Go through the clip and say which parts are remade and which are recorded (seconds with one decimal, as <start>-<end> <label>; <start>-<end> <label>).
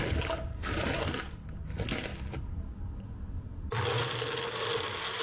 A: 0.0-5.2 recorded